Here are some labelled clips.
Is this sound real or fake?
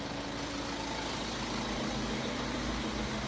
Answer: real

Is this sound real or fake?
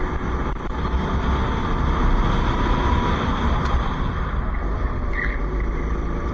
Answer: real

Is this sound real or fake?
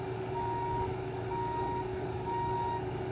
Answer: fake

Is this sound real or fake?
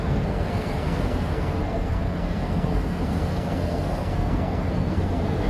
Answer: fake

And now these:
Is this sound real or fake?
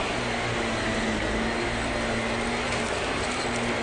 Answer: real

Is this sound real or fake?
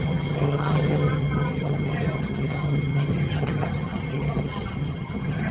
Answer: fake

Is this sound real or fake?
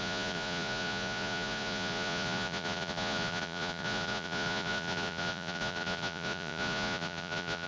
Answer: fake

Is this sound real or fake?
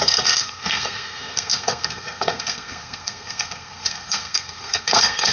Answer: fake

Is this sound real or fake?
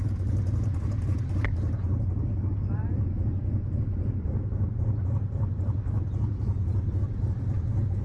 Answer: fake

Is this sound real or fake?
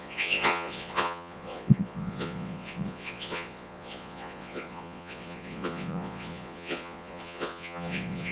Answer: fake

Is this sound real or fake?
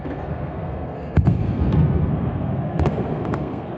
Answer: fake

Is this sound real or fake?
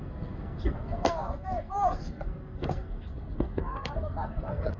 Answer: fake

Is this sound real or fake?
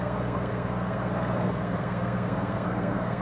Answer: fake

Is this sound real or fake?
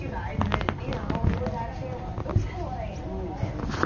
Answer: real